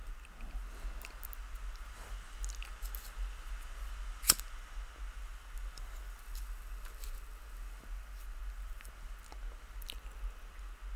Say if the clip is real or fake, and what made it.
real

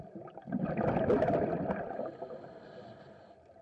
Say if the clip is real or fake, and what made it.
fake, vocoder, BigVGAN v2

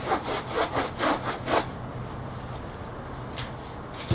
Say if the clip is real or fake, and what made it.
real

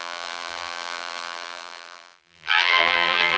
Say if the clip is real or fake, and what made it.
fake, vocoder, BigVGAN v2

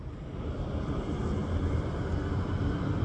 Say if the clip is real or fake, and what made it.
real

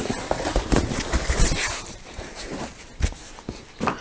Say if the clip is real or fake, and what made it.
real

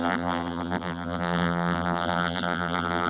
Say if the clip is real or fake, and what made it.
fake, vocoder, BigVGAN v2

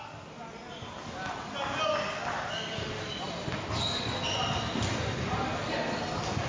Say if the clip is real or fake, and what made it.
real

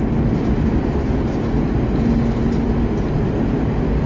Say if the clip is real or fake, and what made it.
real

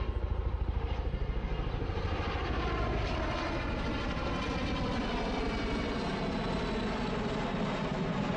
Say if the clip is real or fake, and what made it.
real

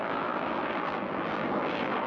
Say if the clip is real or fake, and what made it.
fake, vocoder, BigVGAN v2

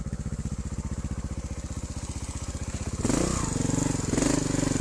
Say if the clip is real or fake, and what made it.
real